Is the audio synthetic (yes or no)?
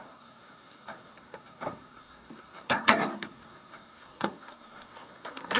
yes